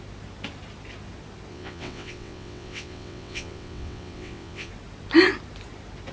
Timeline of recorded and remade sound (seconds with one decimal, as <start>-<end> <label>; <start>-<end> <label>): 0.0-1.5 recorded; 1.5-4.7 remade; 4.7-6.1 recorded